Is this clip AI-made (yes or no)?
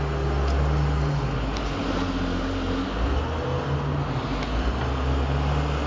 no